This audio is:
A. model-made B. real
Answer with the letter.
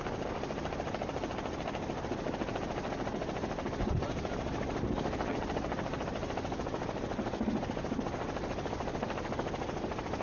B